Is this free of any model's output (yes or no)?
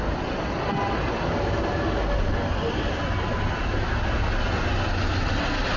yes